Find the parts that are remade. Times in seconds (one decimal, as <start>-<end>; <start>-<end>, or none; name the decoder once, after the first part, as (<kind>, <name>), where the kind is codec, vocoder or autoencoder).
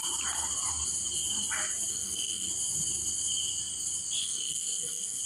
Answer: 1.9-2.5 (codec, SNAC); 4.2-5.2